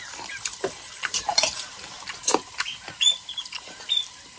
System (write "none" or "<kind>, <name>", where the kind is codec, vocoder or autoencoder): vocoder, BigVGAN v2